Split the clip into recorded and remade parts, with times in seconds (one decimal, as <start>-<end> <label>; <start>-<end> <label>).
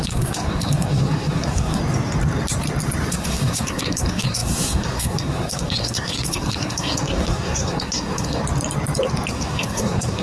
0.0-1.8 remade; 1.8-3.1 recorded; 3.1-8.4 remade; 8.4-9.3 recorded; 9.3-10.2 remade